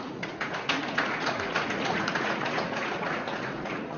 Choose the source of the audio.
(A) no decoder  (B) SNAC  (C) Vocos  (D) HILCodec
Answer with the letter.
C